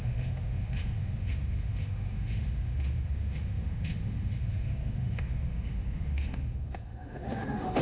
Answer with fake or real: fake